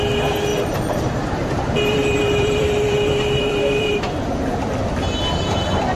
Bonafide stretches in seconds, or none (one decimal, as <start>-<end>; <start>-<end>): 0.0-0.5; 4.0-5.9

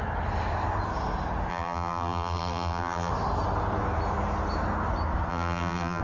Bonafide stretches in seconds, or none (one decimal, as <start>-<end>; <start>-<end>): 0.0-1.5; 3.1-5.3

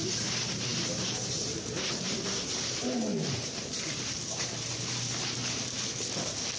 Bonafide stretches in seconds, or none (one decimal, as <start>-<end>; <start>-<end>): 5.4-6.6

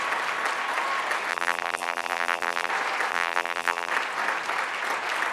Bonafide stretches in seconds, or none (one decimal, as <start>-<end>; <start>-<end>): 0.0-1.3; 2.7-3.1; 3.9-5.3